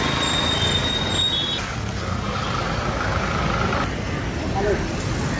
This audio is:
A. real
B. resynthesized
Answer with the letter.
A